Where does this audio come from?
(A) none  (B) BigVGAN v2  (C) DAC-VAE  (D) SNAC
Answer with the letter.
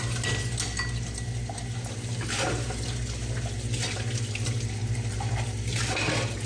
A